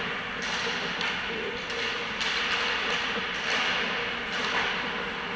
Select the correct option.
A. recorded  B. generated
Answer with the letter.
A